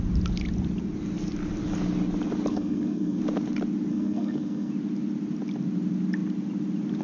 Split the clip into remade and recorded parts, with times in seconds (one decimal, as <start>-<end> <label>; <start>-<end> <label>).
0.0-2.5 recorded; 2.5-3.2 remade; 3.2-3.9 recorded; 3.9-4.7 remade; 4.7-7.0 recorded